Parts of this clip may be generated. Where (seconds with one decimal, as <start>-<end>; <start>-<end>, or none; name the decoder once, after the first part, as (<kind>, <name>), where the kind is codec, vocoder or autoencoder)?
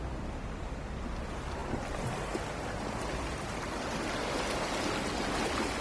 none